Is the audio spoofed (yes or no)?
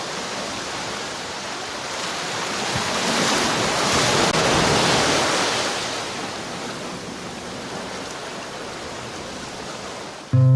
no